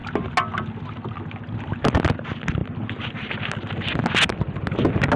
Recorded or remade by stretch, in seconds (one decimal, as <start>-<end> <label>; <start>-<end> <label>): 0.0-5.2 recorded